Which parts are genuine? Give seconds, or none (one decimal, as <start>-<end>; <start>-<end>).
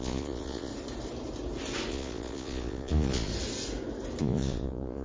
0.7-1.9; 3.3-4.2